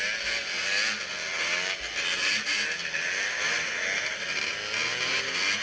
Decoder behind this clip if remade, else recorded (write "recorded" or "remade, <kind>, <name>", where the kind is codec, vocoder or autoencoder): recorded